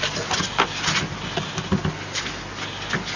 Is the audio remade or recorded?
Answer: recorded